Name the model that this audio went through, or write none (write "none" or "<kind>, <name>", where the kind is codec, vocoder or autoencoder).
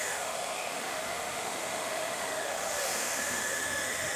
autoencoder, DAC-VAE